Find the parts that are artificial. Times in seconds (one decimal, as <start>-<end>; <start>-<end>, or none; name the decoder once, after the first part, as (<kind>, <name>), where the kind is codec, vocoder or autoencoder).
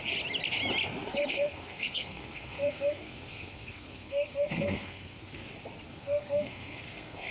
1.1-5.5 (codec, SNAC); 5.9-7.3